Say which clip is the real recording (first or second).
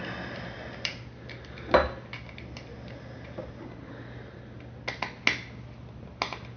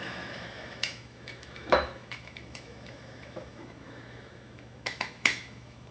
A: first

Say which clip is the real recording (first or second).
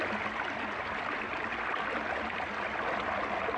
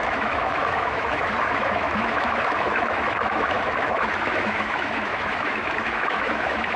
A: first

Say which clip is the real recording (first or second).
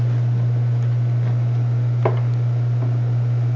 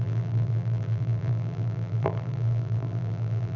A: first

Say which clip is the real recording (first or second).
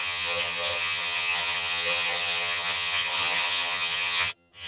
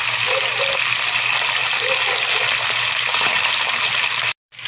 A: second